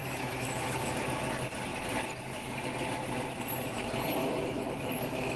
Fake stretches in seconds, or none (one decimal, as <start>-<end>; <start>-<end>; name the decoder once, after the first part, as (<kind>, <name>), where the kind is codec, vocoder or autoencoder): 0.0-0.9 (autoencoder, DAC-VAE); 4.2-5.4